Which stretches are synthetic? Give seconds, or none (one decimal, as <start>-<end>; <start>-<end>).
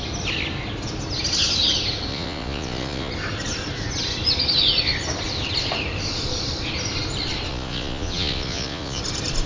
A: 2.1-3.1; 7.5-9.0